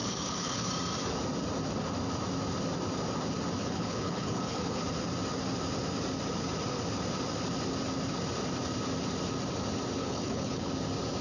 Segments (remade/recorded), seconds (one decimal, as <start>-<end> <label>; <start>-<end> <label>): 0.0-0.7 remade; 0.7-3.6 recorded; 3.6-4.8 remade; 4.8-10.0 recorded; 10.0-10.7 remade; 10.7-11.2 recorded